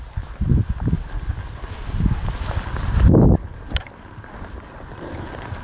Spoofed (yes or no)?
no